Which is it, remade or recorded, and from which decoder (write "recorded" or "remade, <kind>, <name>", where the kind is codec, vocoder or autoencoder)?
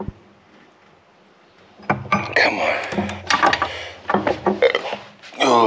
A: recorded